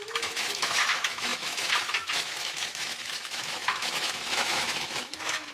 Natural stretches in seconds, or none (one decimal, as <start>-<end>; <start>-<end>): none